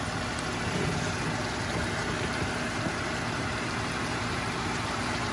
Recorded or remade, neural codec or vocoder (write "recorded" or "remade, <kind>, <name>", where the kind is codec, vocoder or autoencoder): remade, vocoder, BigVGAN v2